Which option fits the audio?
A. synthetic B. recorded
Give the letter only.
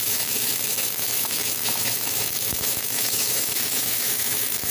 A